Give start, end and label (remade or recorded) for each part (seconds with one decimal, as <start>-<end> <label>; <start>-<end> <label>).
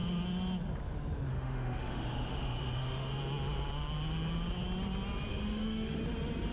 0.0-1.3 recorded; 1.3-3.2 remade; 3.2-5.3 recorded; 5.3-6.0 remade; 6.0-6.5 recorded